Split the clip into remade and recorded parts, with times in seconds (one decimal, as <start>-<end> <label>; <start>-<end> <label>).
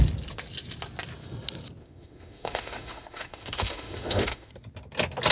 0.0-1.8 recorded; 1.8-4.5 remade; 4.5-5.3 recorded